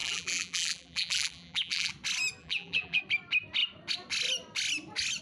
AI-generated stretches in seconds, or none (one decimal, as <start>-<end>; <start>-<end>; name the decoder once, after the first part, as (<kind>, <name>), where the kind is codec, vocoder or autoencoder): 0.0-1.9 (vocoder, BigVGAN v2); 2.4-3.0